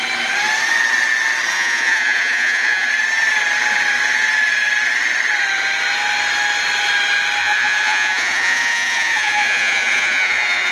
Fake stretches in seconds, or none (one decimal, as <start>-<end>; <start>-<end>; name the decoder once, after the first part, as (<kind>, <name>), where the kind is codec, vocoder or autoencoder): 1.5-2.9 (vocoder, Vocos); 7.4-10.7